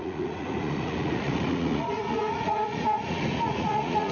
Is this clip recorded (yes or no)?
no